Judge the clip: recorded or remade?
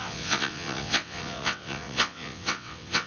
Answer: remade